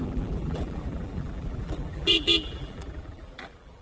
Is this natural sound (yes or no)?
no